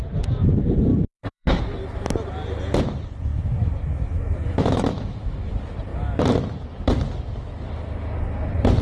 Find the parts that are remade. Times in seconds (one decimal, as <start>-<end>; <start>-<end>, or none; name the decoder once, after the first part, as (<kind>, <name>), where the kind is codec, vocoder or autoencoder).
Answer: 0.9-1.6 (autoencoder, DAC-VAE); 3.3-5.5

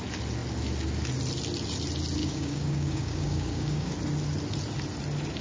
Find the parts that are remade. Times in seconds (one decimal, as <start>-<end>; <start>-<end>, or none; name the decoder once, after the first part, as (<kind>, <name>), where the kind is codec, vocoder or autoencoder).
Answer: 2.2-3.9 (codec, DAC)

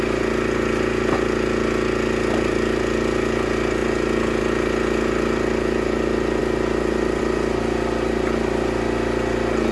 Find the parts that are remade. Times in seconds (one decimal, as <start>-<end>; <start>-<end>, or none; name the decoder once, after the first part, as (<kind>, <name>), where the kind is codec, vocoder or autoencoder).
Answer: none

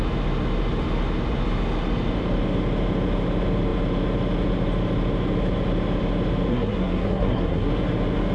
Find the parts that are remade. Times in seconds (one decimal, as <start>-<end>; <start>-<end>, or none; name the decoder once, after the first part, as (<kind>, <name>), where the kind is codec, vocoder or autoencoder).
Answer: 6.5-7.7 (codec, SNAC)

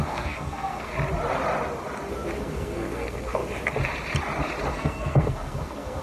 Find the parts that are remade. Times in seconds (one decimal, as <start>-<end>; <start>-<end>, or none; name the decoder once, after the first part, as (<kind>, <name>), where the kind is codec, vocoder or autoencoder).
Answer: 0.0-0.9 (codec, SNAC); 2.4-3.4; 4.7-6.0